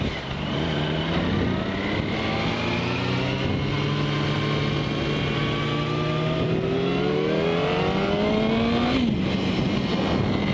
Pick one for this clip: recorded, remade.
recorded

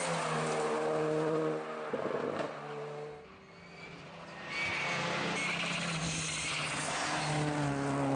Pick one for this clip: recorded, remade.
recorded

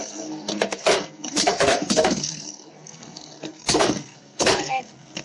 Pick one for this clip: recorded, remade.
remade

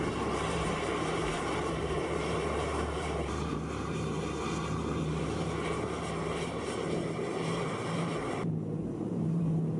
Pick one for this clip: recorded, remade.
remade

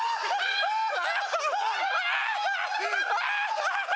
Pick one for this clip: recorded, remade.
recorded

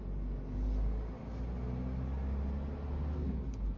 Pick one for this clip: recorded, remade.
recorded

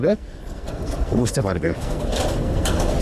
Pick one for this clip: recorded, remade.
remade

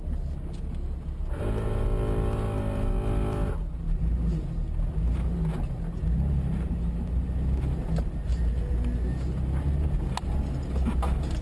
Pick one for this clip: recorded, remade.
recorded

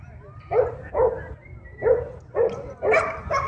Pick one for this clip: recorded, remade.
recorded